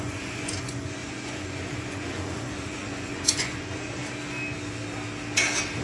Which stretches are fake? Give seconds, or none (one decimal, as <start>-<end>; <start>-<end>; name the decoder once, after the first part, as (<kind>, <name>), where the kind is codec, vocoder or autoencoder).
0.0-4.0 (vocoder, Vocos)